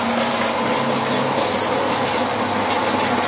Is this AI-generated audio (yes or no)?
no